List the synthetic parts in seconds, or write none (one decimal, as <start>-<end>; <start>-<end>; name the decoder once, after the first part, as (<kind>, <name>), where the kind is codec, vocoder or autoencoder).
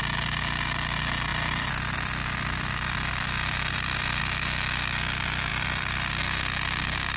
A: 1.3-4.2 (vocoder, BigVGAN v2); 5.5-6.1